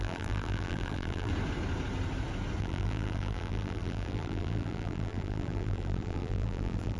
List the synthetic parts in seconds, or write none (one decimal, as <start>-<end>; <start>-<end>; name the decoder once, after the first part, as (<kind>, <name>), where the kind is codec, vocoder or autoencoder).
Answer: 0.0-1.3 (vocoder, BigVGAN v2); 2.6-7.0